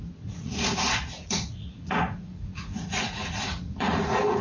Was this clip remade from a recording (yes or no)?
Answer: yes